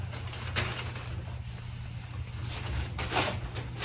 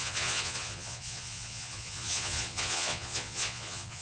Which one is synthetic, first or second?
second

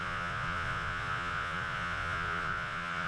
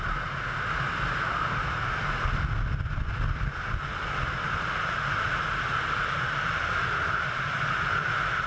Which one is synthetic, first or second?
first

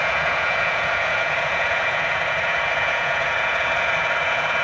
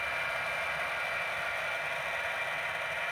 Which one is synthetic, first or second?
first